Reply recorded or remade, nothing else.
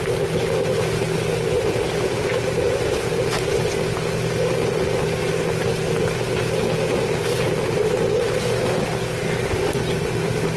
recorded